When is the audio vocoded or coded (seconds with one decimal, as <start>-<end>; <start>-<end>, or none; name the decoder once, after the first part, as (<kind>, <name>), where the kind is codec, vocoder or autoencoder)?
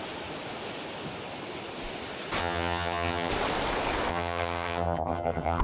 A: 2.4-3.3 (vocoder, HiFi-GAN); 4.1-5.6